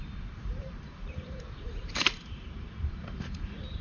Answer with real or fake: fake